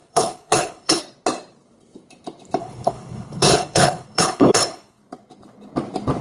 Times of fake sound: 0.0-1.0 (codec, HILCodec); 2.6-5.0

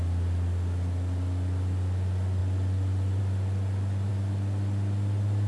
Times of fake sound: none

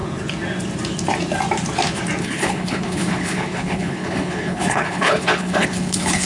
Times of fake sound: 2.2-6.3 (codec, HILCodec)

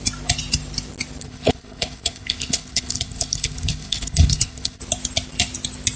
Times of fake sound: 1.2-4.8 (codec, HILCodec)

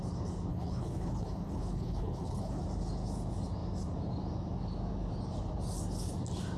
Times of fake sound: 0.5-2.6 (codec, HILCodec)